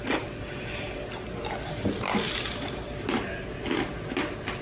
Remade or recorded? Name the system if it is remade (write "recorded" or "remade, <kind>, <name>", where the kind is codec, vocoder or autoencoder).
recorded